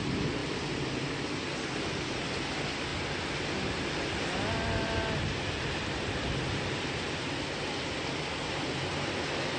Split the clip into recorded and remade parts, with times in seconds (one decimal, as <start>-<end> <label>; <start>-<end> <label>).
0.0-9.6 recorded